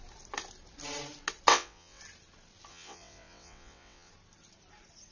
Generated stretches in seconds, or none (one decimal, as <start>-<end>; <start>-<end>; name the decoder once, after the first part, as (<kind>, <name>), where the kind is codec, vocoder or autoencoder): 1.5-2.0 (vocoder, WaveNeXt); 2.7-4.1